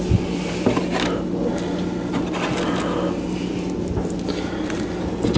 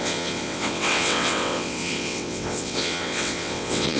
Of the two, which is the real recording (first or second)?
first